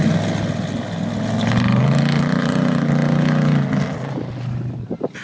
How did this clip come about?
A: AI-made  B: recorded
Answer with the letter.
B